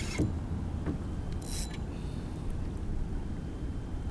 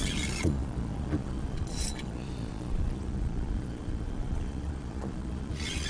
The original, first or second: first